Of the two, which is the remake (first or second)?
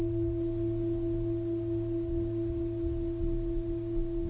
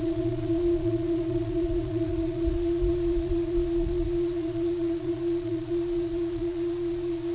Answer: second